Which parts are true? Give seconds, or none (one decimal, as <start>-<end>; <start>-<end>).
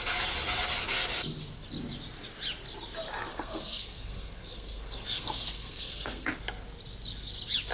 0.0-3.3; 6.3-7.7